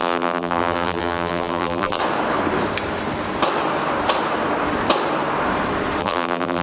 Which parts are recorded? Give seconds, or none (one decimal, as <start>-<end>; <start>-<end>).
2.0-6.0